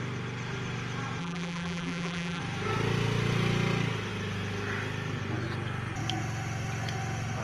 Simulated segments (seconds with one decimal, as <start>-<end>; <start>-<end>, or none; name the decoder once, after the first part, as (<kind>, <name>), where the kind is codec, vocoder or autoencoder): 1.2-2.4 (vocoder, BigVGAN v2)